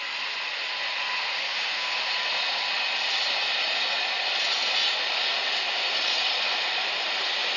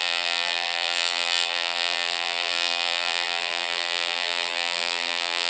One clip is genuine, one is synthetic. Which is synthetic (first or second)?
second